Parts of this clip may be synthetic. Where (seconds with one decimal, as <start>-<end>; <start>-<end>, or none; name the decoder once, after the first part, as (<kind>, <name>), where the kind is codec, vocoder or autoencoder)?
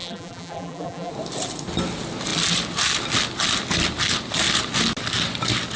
0.0-1.1 (vocoder, BigVGAN v2)